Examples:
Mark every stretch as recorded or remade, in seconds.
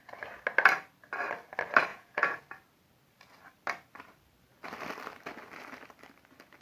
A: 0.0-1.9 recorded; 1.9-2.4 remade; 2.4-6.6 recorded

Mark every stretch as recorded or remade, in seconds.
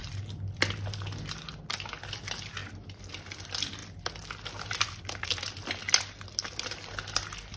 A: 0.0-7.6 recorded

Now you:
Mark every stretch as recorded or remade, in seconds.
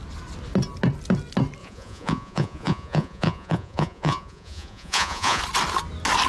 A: 0.0-1.6 recorded; 1.6-5.4 remade; 5.4-6.3 recorded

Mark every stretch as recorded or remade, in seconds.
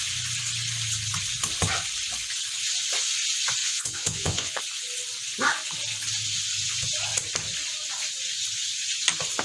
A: 0.0-3.6 recorded; 3.6-4.6 remade; 4.6-9.4 recorded